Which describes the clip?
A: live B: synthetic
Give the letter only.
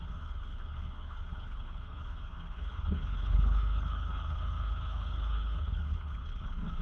B